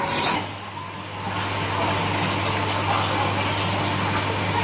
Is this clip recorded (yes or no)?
yes